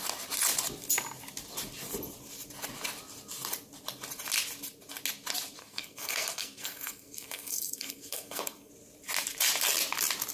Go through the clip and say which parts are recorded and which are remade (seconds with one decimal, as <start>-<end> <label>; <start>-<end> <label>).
0.0-5.6 recorded; 5.6-8.7 remade; 8.7-10.3 recorded